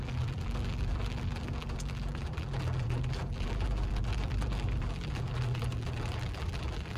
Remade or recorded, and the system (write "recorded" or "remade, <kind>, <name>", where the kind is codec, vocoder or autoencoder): remade, vocoder, BigVGAN v2